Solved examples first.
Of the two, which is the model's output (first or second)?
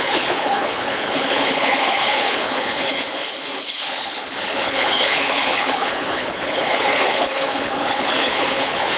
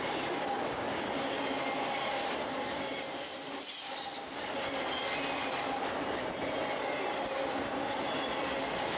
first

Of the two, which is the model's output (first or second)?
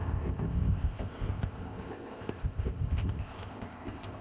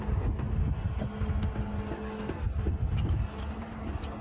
first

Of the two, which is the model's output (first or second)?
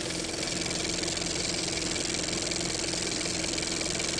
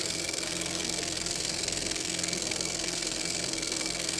second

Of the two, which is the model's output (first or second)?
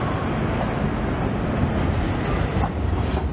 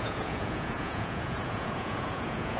second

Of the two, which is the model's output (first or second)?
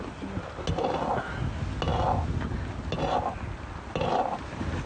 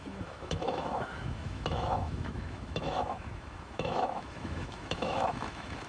second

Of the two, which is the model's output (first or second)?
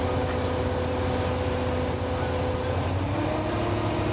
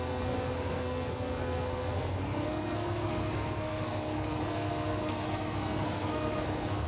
second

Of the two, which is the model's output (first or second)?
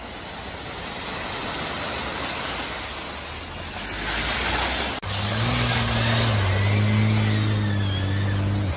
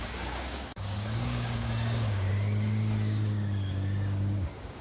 second